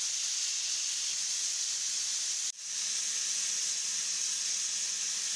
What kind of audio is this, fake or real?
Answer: real